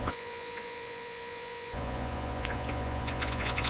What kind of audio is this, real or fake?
fake